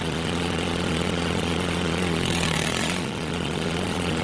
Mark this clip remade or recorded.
remade